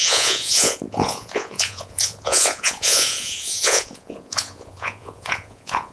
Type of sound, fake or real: fake